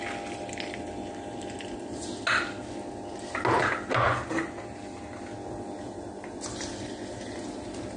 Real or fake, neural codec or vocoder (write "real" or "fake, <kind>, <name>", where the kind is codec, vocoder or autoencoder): real